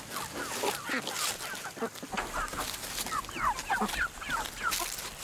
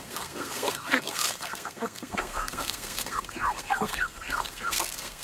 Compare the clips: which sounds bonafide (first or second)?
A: first